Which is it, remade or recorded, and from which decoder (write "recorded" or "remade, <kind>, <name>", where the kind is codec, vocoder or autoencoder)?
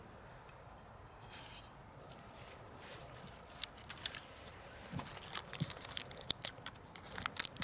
remade, vocoder, BigVGAN v2